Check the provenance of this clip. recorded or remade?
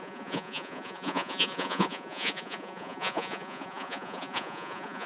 remade